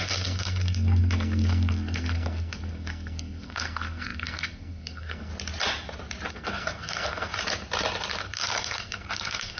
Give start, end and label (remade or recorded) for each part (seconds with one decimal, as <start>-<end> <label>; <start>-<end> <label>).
0.0-5.3 remade; 5.3-6.3 recorded; 6.3-7.3 remade; 7.3-8.2 recorded; 8.2-9.6 remade